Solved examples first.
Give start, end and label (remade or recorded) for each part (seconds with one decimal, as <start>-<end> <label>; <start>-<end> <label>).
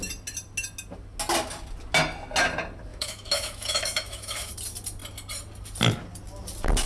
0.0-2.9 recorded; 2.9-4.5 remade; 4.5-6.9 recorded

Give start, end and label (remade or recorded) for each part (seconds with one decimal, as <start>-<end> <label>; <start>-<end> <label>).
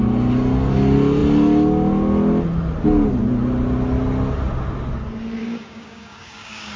0.0-5.4 recorded; 5.4-6.8 remade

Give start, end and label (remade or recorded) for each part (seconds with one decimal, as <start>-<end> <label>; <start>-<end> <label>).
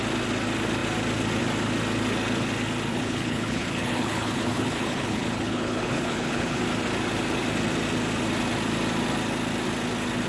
0.0-2.9 recorded; 2.9-6.6 remade; 6.6-10.3 recorded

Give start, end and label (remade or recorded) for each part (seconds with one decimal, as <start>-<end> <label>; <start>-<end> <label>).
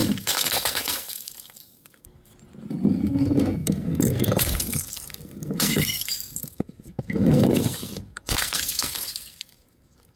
0.0-2.3 remade; 2.3-2.9 recorded; 2.9-10.2 remade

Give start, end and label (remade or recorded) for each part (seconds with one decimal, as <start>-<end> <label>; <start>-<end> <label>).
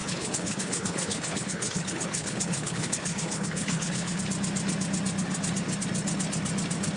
0.0-4.2 remade; 4.2-7.0 recorded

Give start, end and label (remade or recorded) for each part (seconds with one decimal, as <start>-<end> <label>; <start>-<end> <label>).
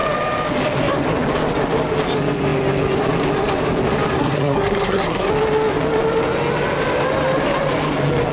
0.0-4.2 recorded; 4.2-5.3 remade; 5.3-8.3 recorded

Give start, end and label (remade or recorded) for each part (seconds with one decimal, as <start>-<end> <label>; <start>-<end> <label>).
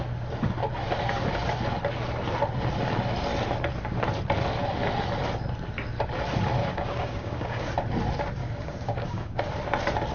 0.0-6.6 recorded; 6.6-7.7 remade; 7.7-8.4 recorded; 8.4-9.4 remade; 9.4-10.1 recorded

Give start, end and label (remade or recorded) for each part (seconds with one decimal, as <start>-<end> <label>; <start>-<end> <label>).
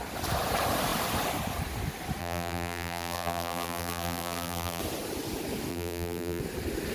0.0-2.2 recorded; 2.2-4.8 remade; 4.8-5.7 recorded; 5.7-6.4 remade; 6.4-6.9 recorded